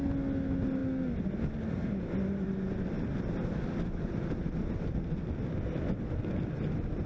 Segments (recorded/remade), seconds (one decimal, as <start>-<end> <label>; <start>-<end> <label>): 0.0-7.1 recorded